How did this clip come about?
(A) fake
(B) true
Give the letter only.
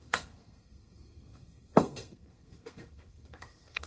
A